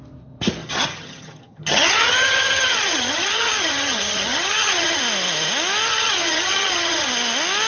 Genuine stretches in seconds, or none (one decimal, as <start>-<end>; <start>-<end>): 0.0-0.6; 5.0-5.9; 7.1-7.7